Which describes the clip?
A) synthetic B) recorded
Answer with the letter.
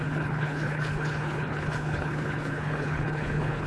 A